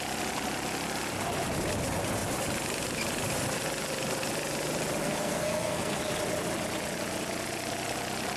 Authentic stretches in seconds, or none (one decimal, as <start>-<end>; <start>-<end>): 0.0-5.0; 6.0-8.4